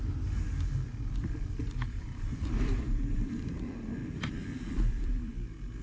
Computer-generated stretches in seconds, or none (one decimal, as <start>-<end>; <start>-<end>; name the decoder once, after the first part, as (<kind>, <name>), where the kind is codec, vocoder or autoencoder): 0.9-3.6 (vocoder, BigVGAN v2); 4.0-5.3